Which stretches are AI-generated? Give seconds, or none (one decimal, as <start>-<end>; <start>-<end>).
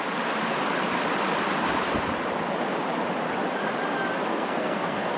4.3-5.2